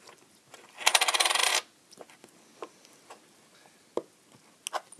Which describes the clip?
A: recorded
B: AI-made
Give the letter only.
A